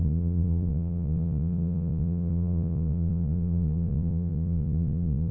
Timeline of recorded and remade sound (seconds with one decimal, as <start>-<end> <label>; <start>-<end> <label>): 0.0-5.3 remade